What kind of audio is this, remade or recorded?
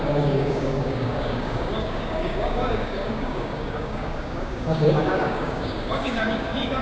remade